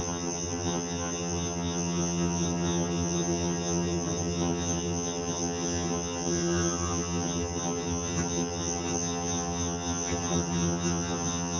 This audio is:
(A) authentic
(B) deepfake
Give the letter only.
B